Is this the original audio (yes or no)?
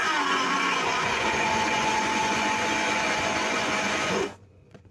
no